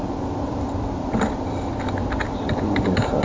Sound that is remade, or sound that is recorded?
remade